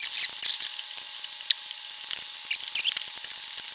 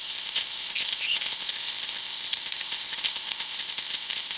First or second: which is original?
first